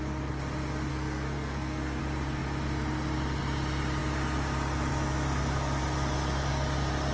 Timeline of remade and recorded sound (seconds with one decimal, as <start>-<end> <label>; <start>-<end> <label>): 0.0-0.9 recorded; 0.9-2.0 remade; 2.0-7.1 recorded